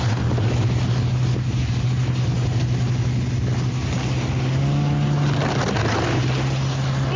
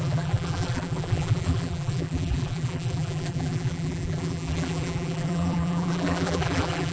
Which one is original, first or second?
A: first